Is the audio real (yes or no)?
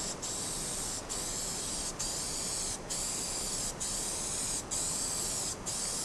yes